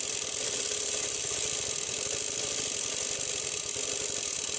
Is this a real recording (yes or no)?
yes